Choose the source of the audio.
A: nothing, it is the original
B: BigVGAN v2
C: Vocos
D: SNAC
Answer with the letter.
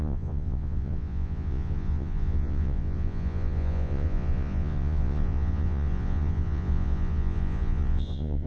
C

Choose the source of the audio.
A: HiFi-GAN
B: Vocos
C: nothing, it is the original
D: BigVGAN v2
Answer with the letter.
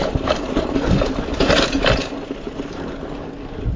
C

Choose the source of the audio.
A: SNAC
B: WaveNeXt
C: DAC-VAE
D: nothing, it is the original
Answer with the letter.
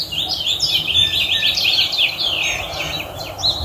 D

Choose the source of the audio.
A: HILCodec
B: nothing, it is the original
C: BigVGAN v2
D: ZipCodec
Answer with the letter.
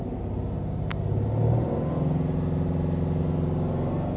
B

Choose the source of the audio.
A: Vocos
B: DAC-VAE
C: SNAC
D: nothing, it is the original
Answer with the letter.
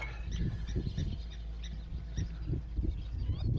D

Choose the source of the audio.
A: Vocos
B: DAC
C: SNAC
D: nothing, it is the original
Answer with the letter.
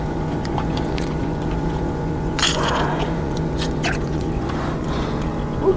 A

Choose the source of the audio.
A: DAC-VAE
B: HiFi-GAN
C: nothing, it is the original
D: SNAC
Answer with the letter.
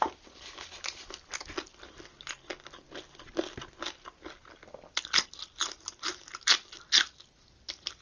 C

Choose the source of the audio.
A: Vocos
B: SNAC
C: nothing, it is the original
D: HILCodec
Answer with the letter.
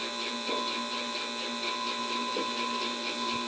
C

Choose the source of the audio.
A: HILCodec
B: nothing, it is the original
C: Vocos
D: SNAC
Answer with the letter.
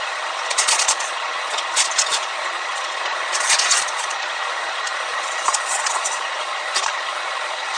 C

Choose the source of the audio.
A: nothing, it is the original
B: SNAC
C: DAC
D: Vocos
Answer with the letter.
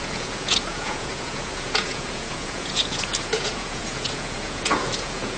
D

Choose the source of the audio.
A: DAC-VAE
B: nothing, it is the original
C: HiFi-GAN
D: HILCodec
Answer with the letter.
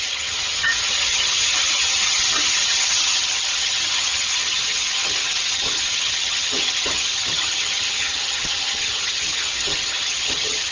C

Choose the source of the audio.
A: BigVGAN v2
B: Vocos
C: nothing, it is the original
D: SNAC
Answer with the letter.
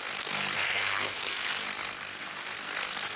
D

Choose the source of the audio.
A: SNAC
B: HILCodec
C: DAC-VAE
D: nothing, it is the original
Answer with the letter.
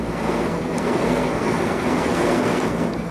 A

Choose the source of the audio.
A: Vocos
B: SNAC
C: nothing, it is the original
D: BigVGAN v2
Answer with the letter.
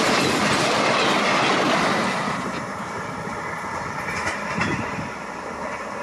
C